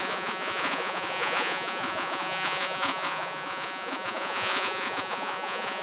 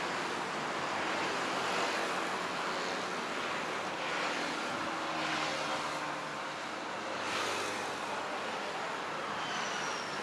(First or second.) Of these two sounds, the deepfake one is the first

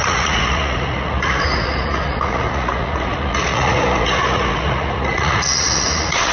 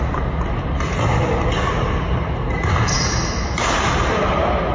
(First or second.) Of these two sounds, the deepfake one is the first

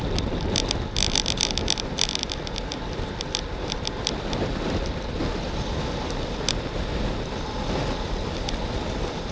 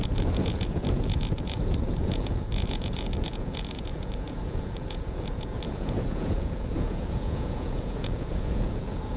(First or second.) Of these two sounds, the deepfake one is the second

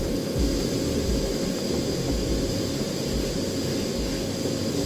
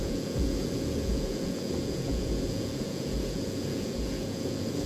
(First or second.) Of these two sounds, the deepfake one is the second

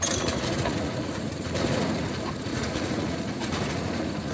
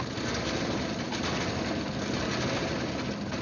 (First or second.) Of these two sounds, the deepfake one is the first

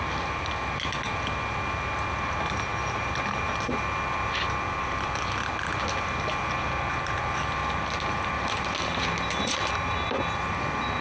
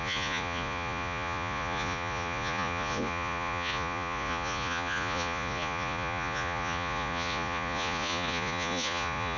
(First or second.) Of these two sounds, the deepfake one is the second